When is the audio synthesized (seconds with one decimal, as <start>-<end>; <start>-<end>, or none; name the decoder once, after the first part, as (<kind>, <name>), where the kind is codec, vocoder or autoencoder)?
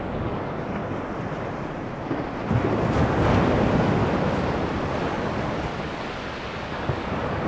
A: 0.0-0.8 (codec, DAC); 5.1-5.7; 6.5-7.5